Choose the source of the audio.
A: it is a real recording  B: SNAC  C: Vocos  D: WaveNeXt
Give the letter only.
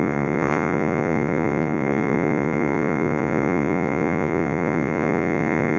C